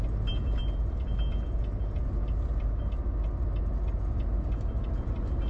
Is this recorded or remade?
recorded